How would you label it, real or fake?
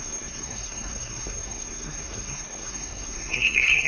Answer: fake